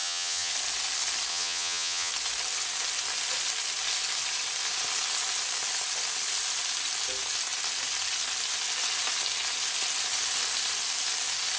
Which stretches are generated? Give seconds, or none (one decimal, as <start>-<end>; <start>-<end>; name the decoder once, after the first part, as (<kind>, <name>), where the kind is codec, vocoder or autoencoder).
0.0-0.5 (vocoder, HiFi-GAN); 1.3-2.1